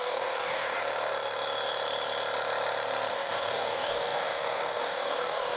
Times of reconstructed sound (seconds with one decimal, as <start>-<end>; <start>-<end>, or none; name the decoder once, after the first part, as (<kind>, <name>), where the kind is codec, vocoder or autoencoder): 0.0-0.8 (codec, DAC); 3.1-5.6